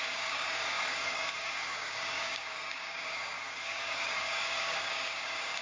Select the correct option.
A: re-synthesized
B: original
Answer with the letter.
A